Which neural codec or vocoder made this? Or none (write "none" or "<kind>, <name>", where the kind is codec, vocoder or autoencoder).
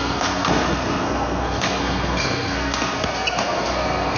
codec, SNAC